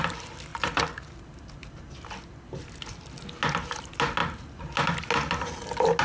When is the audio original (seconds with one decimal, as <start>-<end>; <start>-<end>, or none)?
0.0-0.5; 1.2-6.0